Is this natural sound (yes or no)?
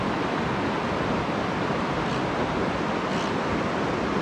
yes